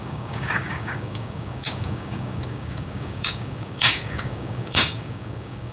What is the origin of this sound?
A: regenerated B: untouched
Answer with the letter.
A